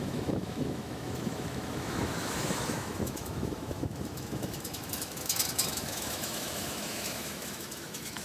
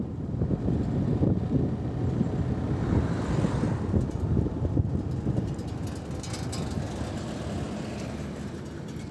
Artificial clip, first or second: first